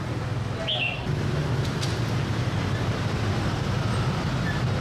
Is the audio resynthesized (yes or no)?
no